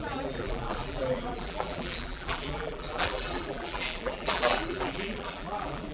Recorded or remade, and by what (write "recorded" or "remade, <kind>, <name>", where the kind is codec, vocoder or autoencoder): remade, vocoder, BigVGAN v2